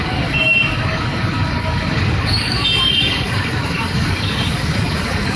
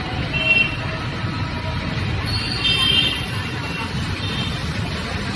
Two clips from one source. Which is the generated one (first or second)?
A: first